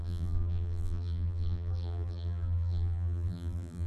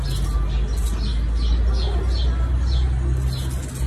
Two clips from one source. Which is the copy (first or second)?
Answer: first